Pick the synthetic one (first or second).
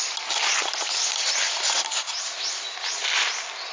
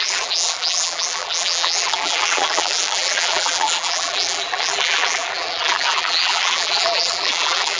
second